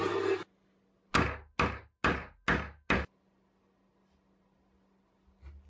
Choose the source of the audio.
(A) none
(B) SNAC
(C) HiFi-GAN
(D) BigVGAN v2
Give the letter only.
A